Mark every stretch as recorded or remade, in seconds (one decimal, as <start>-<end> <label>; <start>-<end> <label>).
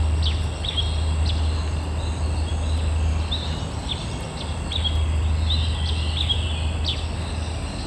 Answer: 0.0-7.9 recorded